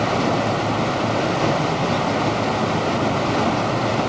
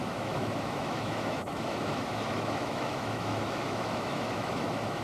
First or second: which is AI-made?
second